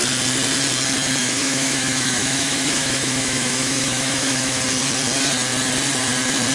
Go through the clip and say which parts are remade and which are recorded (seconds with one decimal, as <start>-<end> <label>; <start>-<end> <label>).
0.0-1.2 recorded; 1.2-4.6 remade; 4.6-6.5 recorded